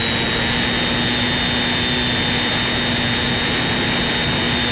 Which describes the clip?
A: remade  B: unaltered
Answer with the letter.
B